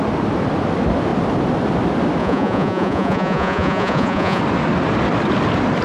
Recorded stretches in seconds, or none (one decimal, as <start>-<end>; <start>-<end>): 0.0-2.2; 4.4-5.8